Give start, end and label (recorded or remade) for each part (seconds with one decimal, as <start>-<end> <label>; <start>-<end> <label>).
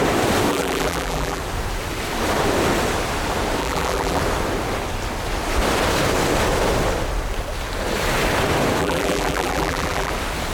0.0-0.5 recorded; 0.5-1.4 remade; 1.4-3.6 recorded; 3.6-4.2 remade; 4.2-8.8 recorded; 8.8-10.1 remade; 10.1-10.5 recorded